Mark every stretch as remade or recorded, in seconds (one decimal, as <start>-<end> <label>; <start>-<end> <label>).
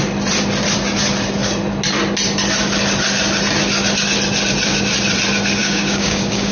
0.0-5.6 recorded; 5.6-6.5 remade